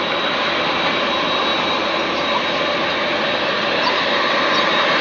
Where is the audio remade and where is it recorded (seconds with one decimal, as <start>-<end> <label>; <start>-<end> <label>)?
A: 0.0-5.0 recorded